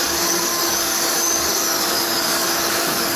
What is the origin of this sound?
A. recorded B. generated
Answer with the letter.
B